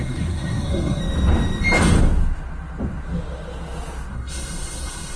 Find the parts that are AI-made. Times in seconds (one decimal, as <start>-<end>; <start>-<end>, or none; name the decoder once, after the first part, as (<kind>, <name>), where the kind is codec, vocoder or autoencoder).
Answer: 0.0-1.0 (codec, SNAC); 4.1-5.2